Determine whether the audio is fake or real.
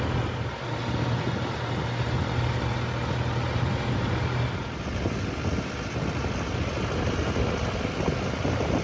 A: real